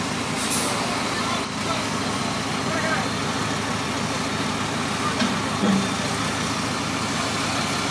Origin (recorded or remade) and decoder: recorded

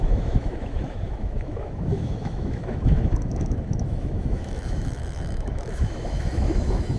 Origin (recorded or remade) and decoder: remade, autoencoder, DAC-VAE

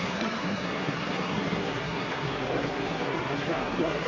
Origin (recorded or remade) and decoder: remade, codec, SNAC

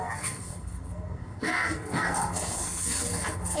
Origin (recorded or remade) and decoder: remade, codec, SNAC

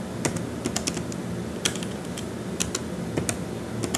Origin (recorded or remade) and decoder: recorded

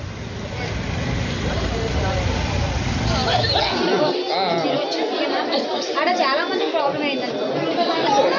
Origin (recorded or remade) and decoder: recorded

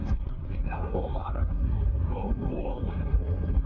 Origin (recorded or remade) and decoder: remade, codec, SNAC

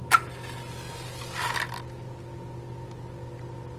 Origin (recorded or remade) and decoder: recorded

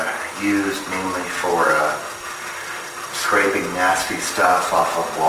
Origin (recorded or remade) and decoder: recorded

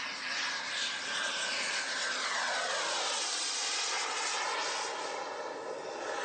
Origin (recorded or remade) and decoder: recorded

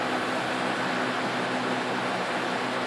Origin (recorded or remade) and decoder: recorded